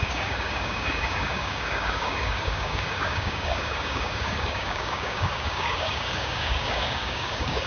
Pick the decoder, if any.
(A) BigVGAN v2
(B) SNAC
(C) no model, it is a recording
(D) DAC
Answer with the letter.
D